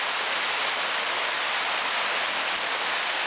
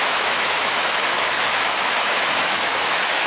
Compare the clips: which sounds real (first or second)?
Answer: first